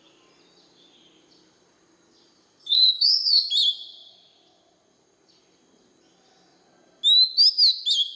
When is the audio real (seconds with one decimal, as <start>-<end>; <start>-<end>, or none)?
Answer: 0.0-2.6; 3.5-8.2